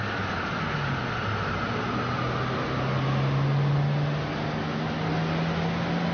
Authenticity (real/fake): real